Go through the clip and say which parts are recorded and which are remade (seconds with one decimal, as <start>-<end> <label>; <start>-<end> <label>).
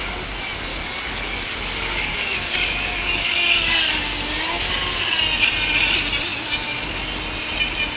0.0-0.7 recorded; 0.7-3.9 remade; 3.9-8.0 recorded